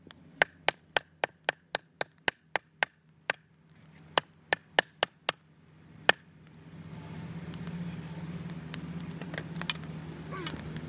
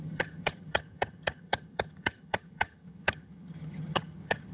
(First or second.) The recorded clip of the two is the first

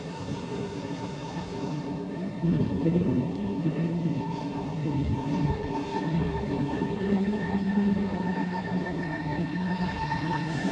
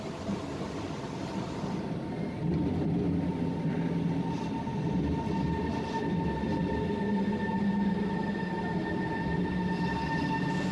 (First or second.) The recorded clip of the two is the second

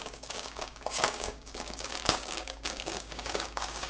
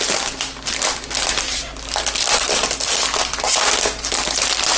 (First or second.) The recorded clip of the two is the second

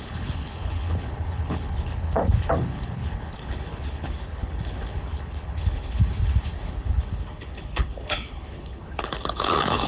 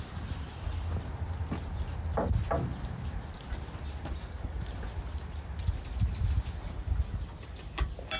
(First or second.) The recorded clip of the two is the second